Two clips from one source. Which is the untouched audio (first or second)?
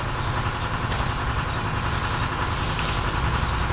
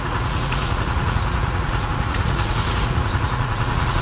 first